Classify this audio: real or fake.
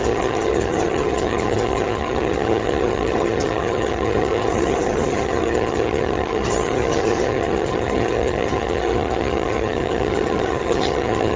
fake